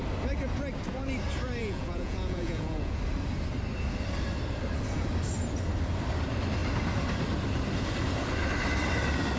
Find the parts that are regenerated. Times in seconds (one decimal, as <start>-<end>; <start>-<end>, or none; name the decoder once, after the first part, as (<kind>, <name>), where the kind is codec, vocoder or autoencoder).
1.6-3.0 (vocoder, Vocos)

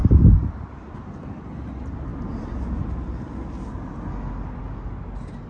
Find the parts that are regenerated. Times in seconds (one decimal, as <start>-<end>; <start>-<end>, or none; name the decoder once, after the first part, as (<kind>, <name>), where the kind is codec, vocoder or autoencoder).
none